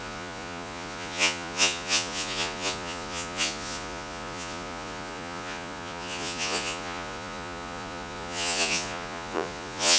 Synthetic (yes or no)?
yes